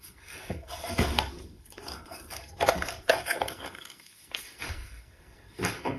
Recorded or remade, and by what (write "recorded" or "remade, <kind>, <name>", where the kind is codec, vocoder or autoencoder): remade, codec, SNAC